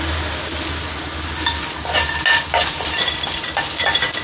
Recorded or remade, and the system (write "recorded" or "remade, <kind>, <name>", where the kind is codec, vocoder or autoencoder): recorded